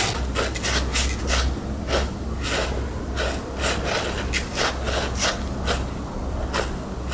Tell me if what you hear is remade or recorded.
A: recorded